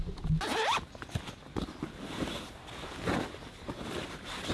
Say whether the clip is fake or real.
real